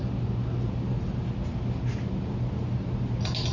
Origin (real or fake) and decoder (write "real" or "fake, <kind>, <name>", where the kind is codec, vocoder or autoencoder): real